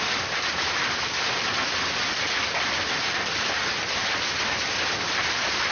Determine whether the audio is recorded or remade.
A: recorded